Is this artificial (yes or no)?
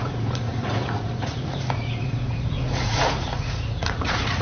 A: yes